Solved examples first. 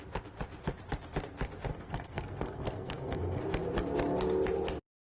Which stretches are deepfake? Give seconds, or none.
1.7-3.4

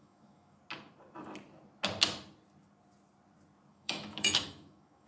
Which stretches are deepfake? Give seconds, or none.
0.0-0.6; 3.7-5.1

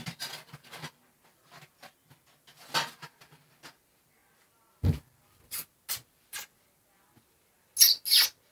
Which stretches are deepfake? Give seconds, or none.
none

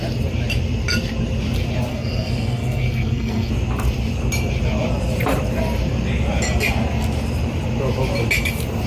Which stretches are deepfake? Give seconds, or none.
1.9-3.5

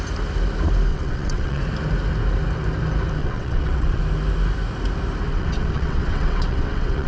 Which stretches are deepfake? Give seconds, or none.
0.9-1.6; 3.2-4.0; 5.3-7.1